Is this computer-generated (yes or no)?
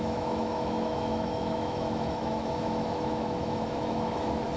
yes